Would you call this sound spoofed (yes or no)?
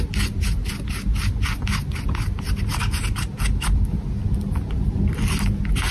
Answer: no